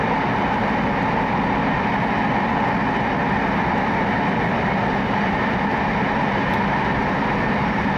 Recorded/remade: recorded